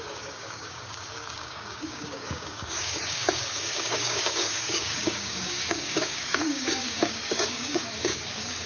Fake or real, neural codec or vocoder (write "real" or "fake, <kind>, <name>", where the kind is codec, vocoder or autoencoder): fake, codec, DAC